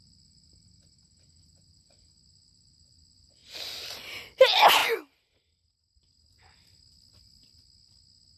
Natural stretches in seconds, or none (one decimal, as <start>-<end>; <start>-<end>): 0.0-8.4